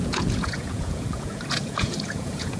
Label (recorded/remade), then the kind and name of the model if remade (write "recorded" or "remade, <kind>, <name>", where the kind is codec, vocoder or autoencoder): remade, vocoder, Vocos